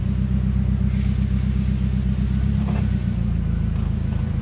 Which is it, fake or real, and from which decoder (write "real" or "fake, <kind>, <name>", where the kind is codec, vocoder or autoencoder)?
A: real